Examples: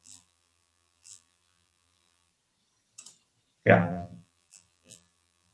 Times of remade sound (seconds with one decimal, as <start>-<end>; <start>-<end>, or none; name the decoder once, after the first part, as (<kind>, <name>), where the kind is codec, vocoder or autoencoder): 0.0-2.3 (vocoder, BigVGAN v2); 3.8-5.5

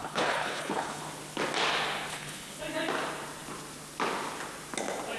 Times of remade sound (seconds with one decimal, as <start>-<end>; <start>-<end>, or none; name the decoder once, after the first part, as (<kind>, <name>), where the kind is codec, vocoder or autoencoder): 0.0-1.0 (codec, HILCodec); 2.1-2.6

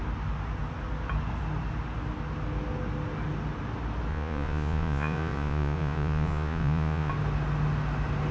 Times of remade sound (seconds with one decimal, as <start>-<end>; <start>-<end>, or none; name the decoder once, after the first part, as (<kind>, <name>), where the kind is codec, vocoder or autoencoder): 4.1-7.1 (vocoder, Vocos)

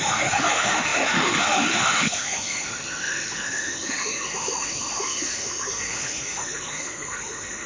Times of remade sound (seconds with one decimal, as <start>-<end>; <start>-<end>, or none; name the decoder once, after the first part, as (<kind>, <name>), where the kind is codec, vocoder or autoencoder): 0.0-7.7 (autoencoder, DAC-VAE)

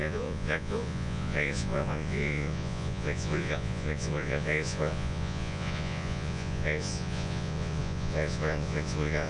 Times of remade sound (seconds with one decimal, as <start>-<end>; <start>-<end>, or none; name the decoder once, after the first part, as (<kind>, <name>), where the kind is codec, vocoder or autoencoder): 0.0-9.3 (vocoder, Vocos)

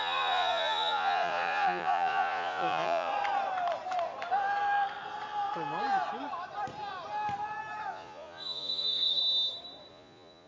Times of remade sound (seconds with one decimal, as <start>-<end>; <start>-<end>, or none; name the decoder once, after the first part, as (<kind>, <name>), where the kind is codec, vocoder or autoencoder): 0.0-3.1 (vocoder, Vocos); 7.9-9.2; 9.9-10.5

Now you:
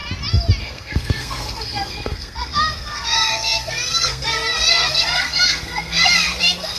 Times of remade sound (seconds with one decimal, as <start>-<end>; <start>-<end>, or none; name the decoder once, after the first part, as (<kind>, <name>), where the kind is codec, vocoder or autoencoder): 0.6-6.8 (codec, SNAC)

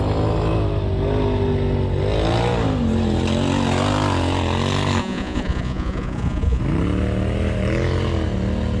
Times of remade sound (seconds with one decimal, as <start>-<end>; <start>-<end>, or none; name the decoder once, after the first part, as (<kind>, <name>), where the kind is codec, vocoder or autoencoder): 5.0-6.6 (vocoder, Vocos)